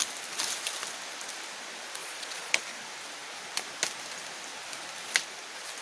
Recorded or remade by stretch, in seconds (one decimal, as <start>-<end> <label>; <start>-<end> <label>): 0.0-2.0 recorded; 2.0-2.6 remade; 2.6-5.8 recorded